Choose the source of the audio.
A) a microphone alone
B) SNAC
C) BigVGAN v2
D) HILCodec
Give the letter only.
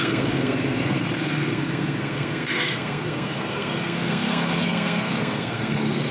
B